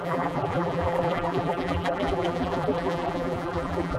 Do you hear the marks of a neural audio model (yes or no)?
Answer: yes